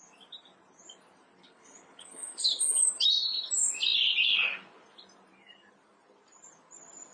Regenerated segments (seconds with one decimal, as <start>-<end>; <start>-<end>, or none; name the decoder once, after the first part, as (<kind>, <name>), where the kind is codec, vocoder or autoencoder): 1.4-2.8 (codec, HILCodec)